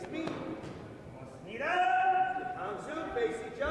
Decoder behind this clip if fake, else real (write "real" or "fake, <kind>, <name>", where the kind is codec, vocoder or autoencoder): fake, vocoder, BigVGAN v2